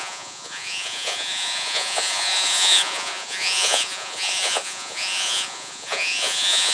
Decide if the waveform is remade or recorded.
remade